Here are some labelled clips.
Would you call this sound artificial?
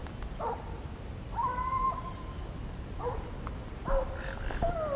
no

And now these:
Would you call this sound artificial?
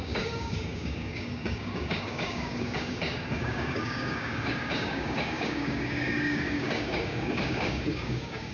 yes